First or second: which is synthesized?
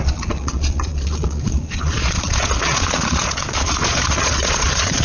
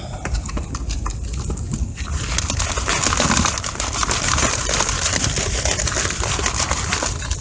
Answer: first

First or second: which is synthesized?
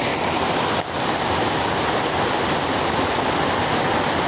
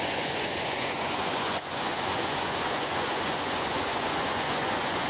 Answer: second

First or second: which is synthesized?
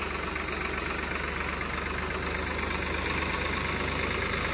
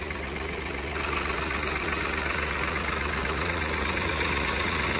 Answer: second